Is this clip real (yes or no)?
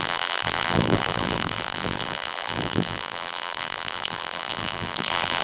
no